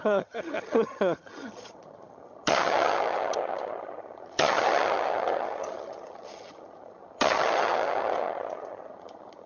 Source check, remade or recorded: remade